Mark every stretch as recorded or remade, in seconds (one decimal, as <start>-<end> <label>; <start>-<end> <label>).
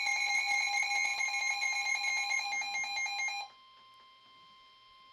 0.0-5.1 recorded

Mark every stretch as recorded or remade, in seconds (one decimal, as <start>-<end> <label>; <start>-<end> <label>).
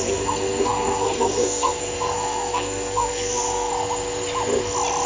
0.0-3.7 remade; 3.7-5.1 recorded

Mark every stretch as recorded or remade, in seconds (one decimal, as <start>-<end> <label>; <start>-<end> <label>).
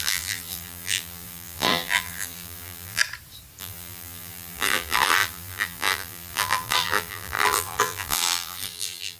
0.0-3.0 remade; 3.0-3.6 recorded; 3.6-9.2 remade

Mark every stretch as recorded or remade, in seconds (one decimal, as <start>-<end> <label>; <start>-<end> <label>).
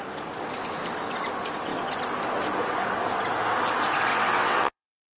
0.0-4.1 recorded; 4.1-5.2 remade